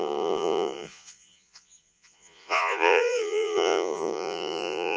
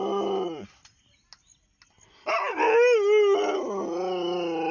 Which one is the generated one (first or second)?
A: first